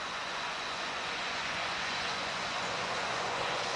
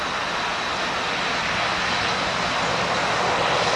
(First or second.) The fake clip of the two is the first